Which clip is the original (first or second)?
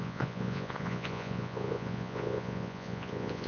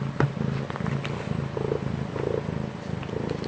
second